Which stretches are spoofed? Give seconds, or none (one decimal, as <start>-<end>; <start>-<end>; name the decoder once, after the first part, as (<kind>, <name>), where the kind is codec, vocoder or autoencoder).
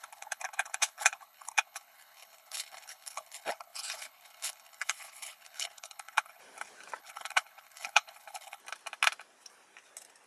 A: 0.0-6.4 (codec, HILCodec); 7.0-8.6